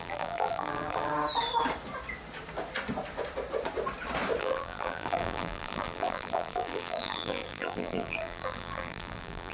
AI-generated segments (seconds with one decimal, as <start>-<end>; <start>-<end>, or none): 0.0-1.1; 4.4-9.5